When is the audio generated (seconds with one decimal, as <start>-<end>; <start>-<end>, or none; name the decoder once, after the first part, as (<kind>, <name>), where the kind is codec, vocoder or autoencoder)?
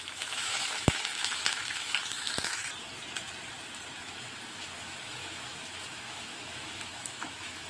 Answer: 0.0-2.7 (autoencoder, DAC-VAE); 4.0-7.7